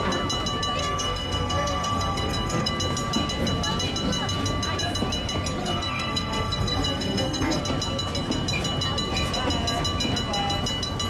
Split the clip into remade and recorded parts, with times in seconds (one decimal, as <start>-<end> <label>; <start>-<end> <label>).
0.0-0.8 recorded; 0.8-2.7 remade; 2.7-5.6 recorded; 5.6-7.6 remade; 7.6-11.1 recorded